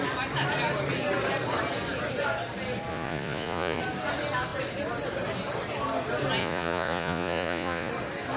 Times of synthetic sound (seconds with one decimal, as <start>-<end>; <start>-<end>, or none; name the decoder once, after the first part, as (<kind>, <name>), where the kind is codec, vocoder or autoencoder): 2.9-3.8 (vocoder, Vocos); 6.4-7.9